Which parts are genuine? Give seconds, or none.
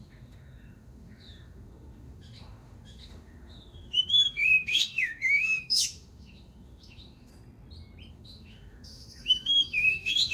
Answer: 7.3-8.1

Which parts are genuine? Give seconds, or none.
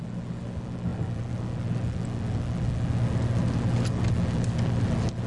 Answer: 0.0-5.3